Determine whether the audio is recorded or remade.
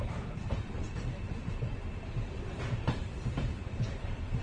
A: remade